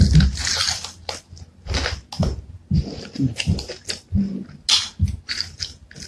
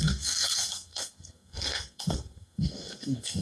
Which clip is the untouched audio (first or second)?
first